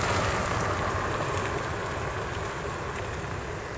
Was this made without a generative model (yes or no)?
yes